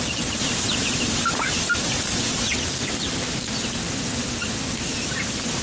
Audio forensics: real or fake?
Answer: real